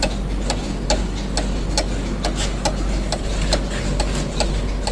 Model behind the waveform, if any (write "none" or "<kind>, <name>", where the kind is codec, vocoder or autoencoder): none